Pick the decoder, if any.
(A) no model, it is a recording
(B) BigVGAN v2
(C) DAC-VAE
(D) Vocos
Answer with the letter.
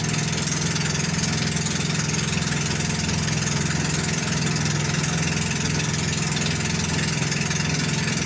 A